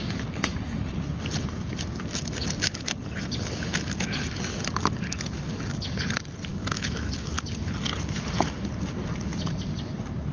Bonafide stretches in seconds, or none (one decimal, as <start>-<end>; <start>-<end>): 0.0-6.5; 7.3-10.3